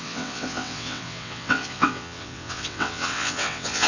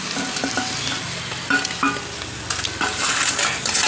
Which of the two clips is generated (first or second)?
first